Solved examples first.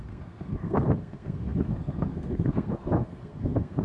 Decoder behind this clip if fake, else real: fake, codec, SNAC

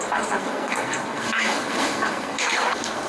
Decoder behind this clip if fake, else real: fake, codec, SNAC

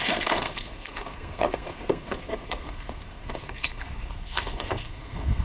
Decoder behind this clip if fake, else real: fake, codec, SNAC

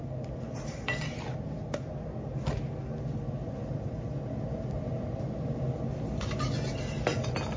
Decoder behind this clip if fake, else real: real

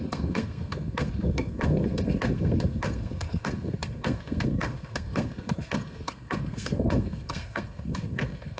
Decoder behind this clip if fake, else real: fake, codec, SNAC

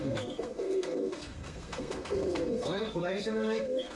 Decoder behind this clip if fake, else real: fake, codec, SNAC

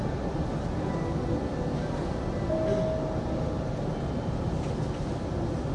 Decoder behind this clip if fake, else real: real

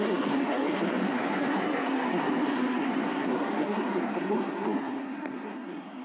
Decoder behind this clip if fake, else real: fake, codec, SNAC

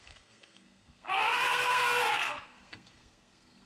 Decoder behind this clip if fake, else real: fake, codec, SNAC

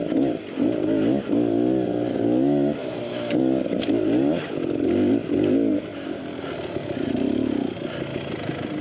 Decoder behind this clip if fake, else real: real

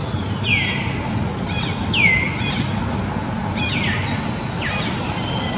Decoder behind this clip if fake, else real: real